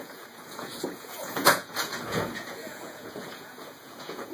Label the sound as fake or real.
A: fake